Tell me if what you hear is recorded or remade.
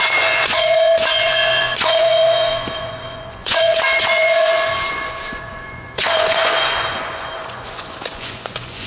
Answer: remade